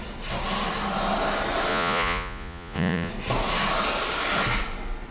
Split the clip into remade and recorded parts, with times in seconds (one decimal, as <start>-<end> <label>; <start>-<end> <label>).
0.0-1.7 recorded; 1.7-3.1 remade; 3.1-5.1 recorded